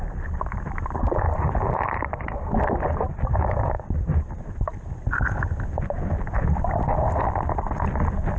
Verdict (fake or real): real